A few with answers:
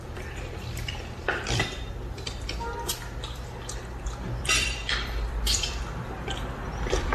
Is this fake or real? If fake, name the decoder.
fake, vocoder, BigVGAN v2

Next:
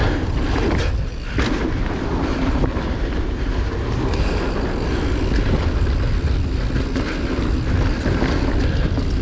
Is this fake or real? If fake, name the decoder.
real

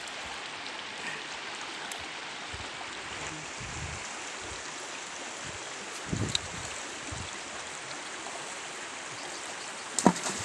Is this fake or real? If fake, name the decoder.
real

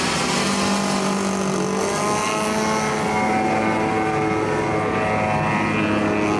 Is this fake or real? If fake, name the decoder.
real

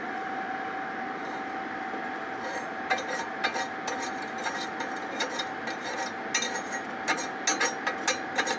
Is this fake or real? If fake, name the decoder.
real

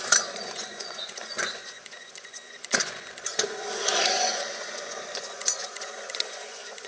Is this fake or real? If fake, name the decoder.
fake, vocoder, Vocos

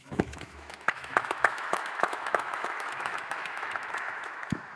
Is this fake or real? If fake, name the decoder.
fake, autoencoder, DAC-VAE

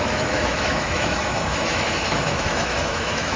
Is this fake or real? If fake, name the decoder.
fake, autoencoder, DAC-VAE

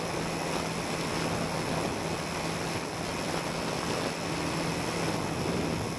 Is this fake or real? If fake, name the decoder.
real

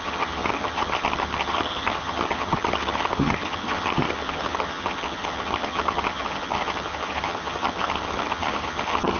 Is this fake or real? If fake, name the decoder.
fake, vocoder, HiFi-GAN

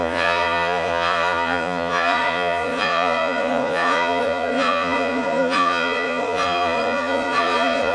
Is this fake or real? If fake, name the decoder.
fake, vocoder, Vocos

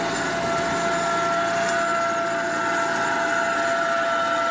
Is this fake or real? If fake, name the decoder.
real